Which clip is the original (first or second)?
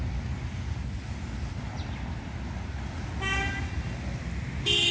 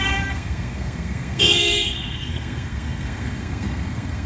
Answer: first